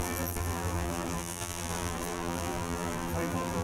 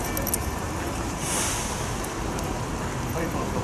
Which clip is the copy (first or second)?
first